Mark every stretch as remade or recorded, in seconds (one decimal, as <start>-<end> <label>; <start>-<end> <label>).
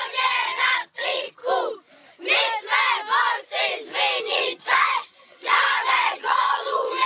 0.0-1.4 remade; 1.4-4.2 recorded; 4.2-7.1 remade